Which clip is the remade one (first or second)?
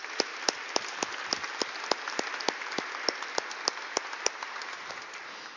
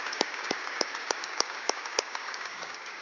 second